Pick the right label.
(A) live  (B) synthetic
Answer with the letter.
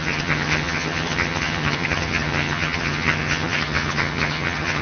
B